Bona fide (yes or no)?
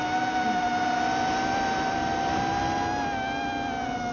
yes